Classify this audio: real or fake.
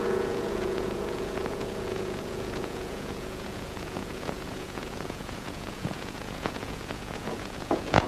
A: fake